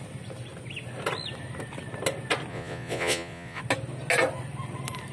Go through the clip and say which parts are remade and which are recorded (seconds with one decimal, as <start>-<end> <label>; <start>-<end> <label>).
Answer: 0.0-2.5 recorded; 2.5-3.6 remade; 3.6-5.1 recorded